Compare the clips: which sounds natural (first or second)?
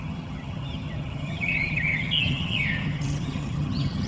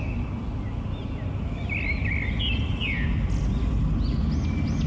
second